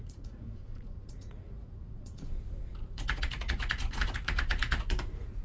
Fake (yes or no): yes